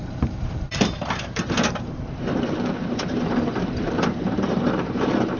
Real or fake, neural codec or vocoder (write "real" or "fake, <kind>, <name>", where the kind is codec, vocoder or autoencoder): fake, vocoder, BigVGAN v2